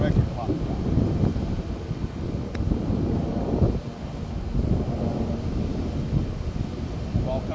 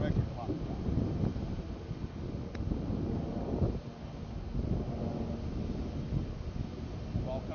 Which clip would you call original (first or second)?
second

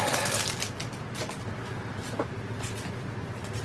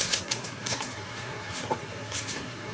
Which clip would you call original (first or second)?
first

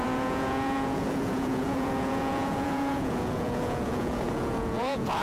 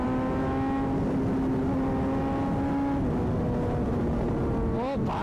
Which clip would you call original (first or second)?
second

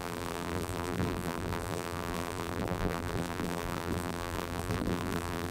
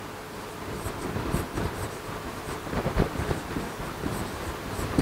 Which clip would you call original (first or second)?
second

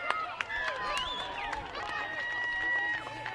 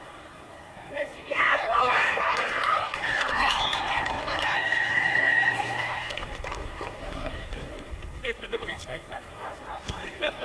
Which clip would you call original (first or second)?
first